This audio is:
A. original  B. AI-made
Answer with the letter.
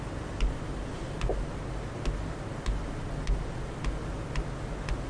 A